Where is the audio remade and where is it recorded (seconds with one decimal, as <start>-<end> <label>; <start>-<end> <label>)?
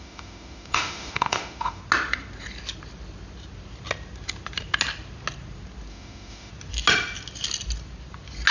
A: 0.0-1.8 remade; 1.8-5.9 recorded; 5.9-6.5 remade; 6.5-8.5 recorded